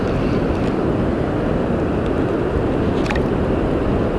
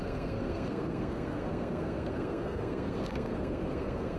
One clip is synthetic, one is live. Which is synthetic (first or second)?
second